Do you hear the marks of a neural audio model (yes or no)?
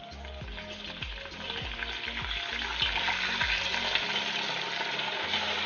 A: no